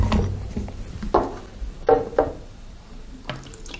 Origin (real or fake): real